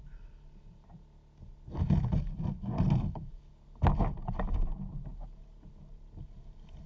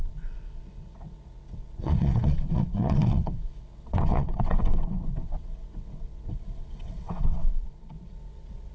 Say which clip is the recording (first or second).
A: first